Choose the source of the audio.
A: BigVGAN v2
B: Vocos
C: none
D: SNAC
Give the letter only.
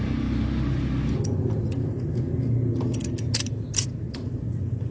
C